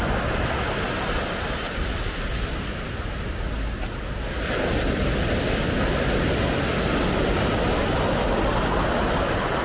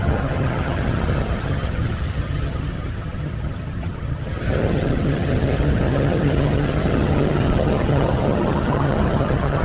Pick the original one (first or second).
first